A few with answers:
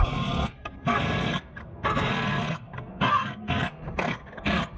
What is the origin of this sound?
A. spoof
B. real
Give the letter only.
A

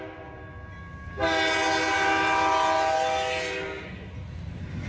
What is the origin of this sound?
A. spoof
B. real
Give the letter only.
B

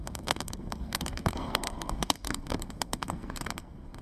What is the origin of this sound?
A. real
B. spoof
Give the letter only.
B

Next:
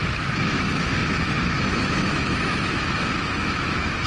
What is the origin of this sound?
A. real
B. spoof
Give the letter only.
B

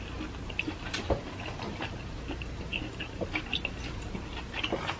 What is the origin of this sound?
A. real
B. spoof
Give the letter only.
A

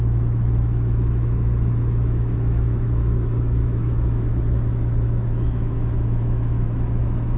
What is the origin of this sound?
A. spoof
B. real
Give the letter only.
A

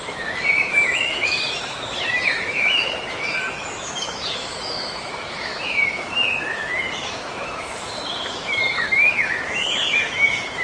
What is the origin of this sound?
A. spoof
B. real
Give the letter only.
A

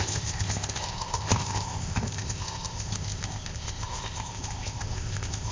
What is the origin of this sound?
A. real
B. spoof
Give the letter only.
B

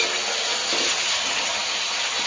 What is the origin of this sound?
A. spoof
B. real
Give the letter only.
B